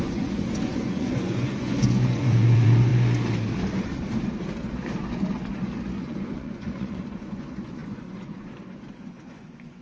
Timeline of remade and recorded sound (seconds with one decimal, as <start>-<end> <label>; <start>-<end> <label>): 0.0-2.9 remade; 2.9-6.0 recorded; 6.0-9.8 remade